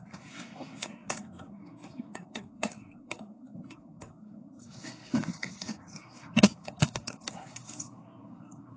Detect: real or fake fake